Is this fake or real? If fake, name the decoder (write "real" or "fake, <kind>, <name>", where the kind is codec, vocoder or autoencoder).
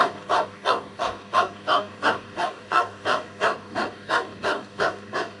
fake, codec, DAC